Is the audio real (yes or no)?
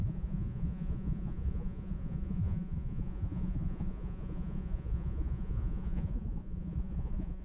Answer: no